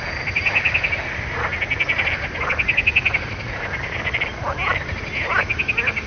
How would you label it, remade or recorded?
recorded